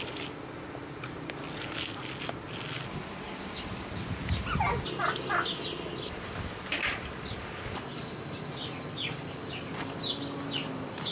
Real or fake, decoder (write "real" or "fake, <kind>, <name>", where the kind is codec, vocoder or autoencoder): real